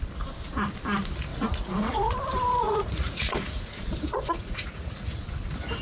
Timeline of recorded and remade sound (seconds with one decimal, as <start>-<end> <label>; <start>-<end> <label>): 0.0-1.3 recorded; 1.3-2.1 remade; 2.1-2.6 recorded; 2.6-5.2 remade; 5.2-5.8 recorded